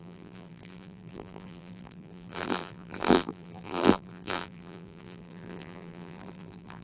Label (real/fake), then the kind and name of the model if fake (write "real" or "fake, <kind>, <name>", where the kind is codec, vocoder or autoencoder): fake, vocoder, BigVGAN v2